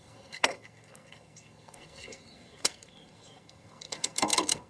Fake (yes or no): yes